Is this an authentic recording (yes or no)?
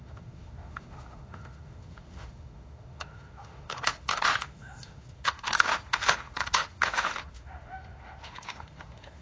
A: no